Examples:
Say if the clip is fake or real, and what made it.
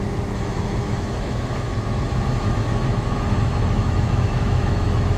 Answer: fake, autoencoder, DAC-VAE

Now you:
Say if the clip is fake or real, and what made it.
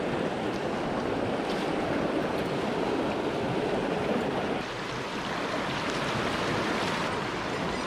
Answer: real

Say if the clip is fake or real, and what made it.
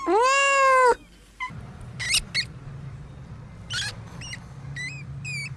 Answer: real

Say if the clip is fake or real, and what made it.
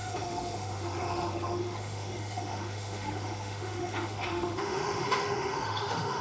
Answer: fake, autoencoder, DAC-VAE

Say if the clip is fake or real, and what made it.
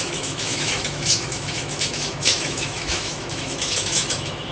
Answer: fake, autoencoder, DAC-VAE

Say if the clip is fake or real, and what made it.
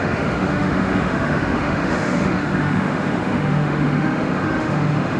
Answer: fake, autoencoder, DAC-VAE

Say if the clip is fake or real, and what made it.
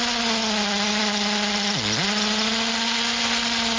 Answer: real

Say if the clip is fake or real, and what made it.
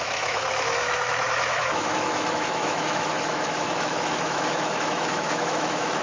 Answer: fake, autoencoder, DAC-VAE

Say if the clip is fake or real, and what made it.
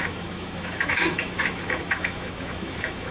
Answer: fake, autoencoder, DAC-VAE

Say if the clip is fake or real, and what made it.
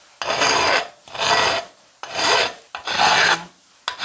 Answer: real